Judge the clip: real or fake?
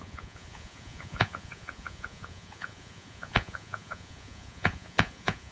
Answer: fake